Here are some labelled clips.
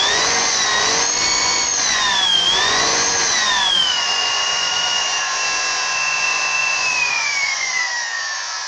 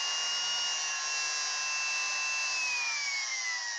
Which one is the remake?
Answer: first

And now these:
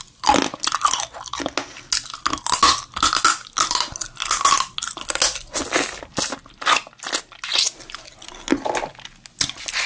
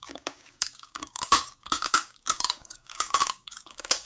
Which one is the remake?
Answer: second